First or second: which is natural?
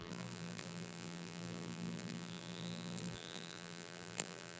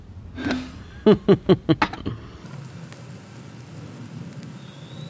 second